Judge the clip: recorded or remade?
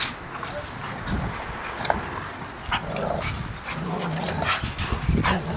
recorded